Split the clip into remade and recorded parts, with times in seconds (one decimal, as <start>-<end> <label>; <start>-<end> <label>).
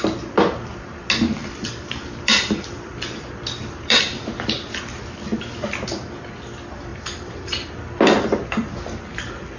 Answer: 0.0-1.4 recorded; 1.4-4.8 remade; 4.8-6.9 recorded; 6.9-7.7 remade; 7.7-9.6 recorded